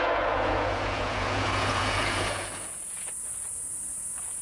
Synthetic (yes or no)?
yes